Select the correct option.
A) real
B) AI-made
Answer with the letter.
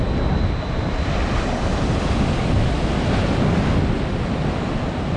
A